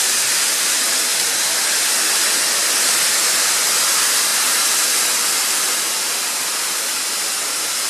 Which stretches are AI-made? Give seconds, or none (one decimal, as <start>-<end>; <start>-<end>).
none